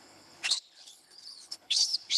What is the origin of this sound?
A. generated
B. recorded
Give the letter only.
A